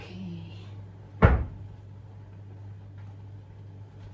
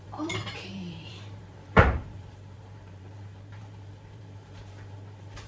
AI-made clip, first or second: second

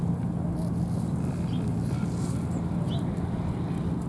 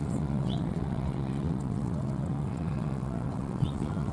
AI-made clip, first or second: second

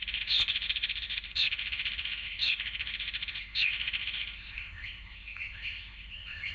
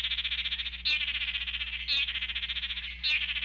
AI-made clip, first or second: first